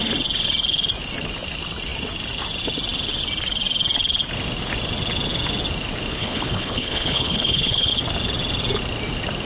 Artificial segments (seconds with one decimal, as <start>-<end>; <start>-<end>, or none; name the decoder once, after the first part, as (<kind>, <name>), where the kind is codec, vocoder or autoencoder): 6.1-7.9 (codec, HILCodec)